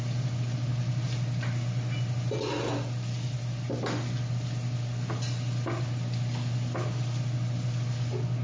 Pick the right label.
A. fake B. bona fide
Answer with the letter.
B